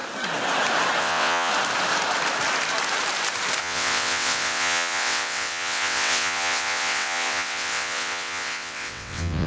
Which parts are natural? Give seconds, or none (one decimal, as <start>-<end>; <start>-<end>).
0.0-1.0; 1.5-3.6